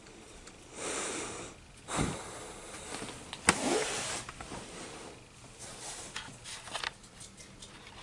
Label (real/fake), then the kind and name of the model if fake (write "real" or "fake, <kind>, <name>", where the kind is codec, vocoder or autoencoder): real